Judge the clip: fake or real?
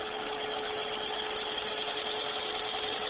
real